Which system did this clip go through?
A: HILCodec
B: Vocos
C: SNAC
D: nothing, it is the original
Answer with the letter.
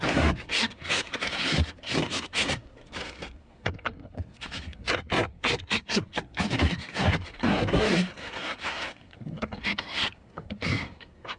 C